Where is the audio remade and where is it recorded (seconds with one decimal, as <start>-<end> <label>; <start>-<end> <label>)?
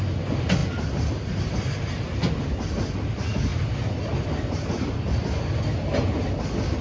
0.0-6.8 recorded